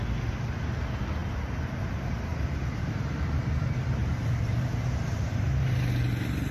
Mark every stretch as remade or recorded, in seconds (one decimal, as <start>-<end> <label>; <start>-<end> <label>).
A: 0.0-4.0 recorded; 4.0-5.6 remade; 5.6-6.5 recorded